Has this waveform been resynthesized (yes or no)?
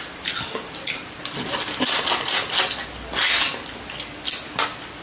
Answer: no